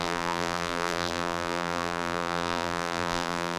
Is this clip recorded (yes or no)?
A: no